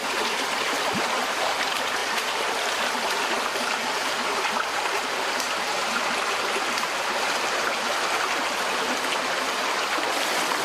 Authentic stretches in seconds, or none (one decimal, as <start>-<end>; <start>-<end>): 0.0-10.6